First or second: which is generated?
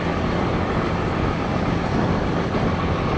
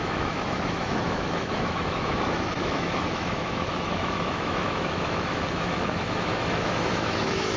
second